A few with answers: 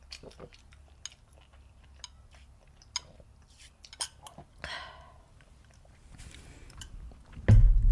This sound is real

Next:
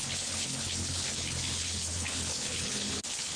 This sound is fake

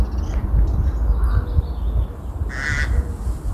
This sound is real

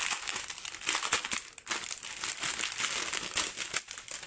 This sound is real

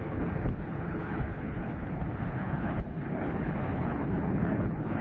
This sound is fake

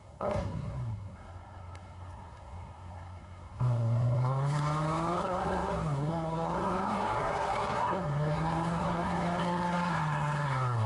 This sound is fake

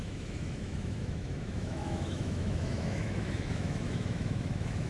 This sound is fake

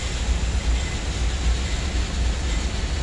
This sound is real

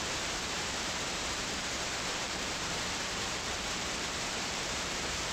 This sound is fake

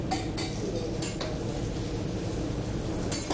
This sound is real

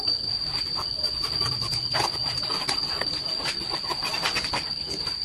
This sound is fake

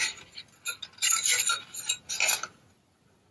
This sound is real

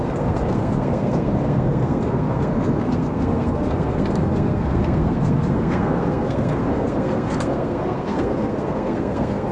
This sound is fake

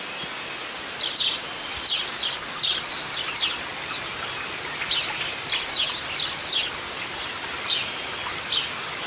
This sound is real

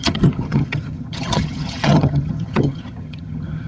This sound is fake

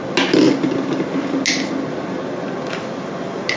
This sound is real